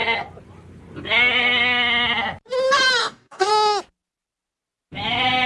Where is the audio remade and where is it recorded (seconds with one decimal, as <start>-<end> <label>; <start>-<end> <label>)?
0.0-3.0 recorded; 3.0-3.5 remade; 3.5-5.5 recorded